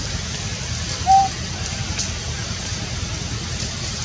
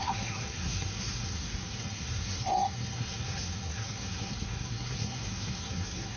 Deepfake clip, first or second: second